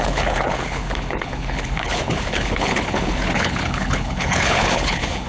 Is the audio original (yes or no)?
no